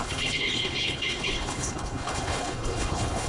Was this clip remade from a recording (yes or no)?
yes